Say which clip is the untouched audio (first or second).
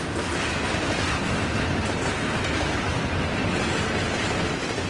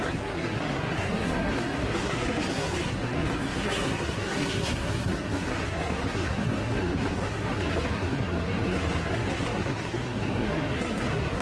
first